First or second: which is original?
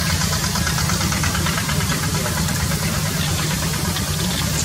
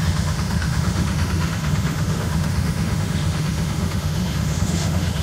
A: first